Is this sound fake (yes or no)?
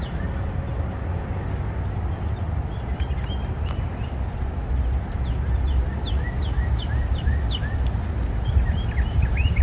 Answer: no